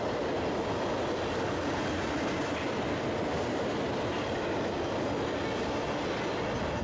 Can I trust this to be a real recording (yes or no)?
yes